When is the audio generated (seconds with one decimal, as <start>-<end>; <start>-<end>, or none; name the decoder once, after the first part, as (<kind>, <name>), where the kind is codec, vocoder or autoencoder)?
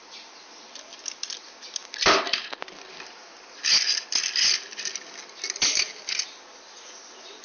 none